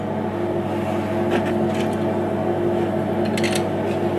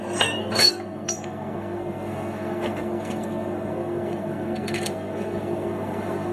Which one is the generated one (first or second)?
second